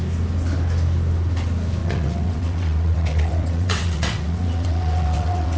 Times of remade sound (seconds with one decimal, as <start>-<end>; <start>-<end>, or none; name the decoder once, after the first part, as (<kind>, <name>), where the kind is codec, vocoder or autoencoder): 1.8-5.6 (vocoder, WaveNeXt)